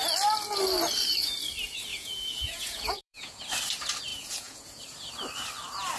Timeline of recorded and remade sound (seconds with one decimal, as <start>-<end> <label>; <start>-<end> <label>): 0.0-1.9 recorded; 1.9-3.4 remade; 3.4-4.1 recorded; 4.1-4.8 remade; 4.8-6.0 recorded